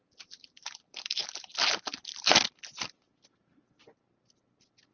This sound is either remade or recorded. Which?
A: recorded